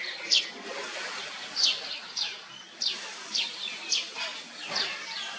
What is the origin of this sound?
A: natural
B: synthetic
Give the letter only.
A